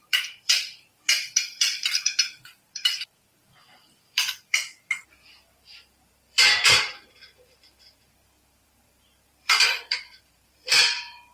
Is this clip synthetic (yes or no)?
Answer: yes